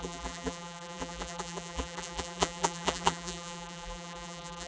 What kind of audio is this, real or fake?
fake